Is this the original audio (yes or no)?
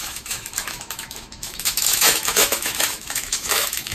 no